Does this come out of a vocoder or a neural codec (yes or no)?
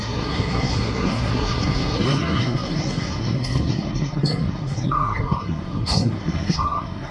yes